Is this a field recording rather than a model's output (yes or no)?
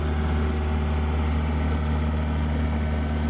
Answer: yes